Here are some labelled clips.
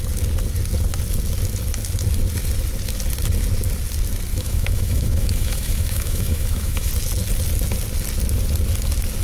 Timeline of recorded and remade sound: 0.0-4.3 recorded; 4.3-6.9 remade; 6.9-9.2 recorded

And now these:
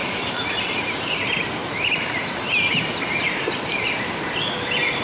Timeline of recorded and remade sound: 0.0-0.6 remade; 0.6-1.6 recorded; 1.6-2.9 remade; 2.9-5.0 recorded